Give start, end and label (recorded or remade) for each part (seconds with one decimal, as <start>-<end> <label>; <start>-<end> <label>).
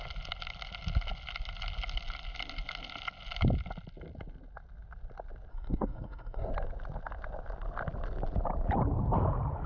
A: 0.0-5.5 recorded; 5.5-6.5 remade; 6.5-9.7 recorded